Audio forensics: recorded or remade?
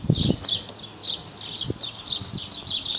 recorded